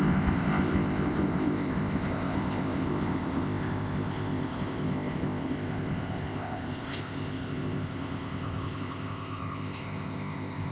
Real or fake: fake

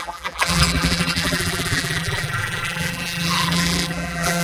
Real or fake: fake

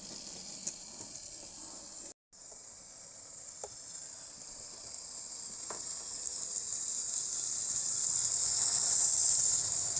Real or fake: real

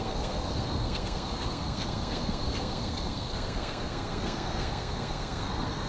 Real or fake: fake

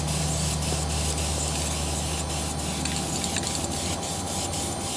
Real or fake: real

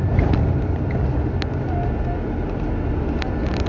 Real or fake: real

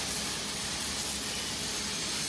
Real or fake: real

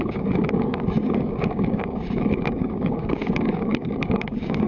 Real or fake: fake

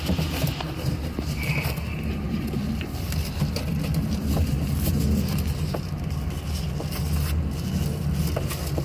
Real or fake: fake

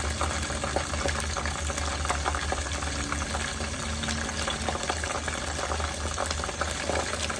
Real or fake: real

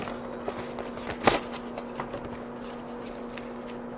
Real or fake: real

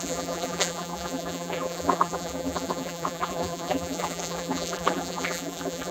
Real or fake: fake